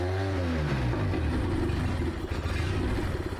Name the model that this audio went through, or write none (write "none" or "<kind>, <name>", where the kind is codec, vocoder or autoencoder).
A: none